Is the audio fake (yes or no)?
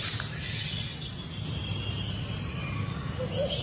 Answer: no